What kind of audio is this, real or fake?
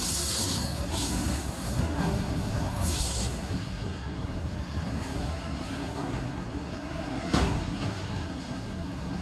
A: fake